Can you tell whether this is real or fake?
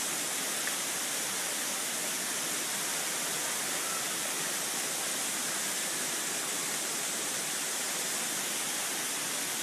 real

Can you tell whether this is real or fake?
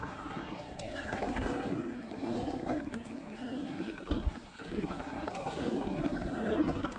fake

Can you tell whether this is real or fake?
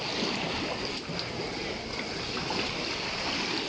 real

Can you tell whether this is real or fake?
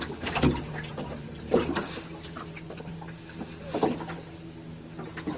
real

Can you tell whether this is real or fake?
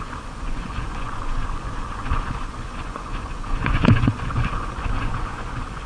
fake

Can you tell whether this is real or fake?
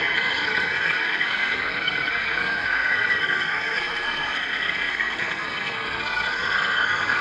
fake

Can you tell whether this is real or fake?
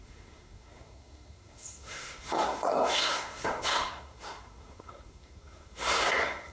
fake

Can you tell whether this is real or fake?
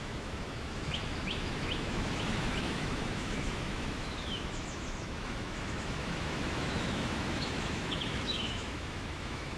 fake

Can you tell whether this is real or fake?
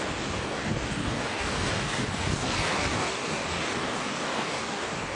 fake